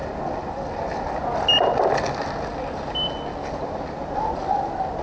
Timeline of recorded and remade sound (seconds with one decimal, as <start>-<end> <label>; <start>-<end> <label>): 0.0-5.0 recorded